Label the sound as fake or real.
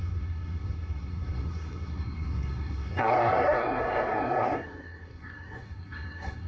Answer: fake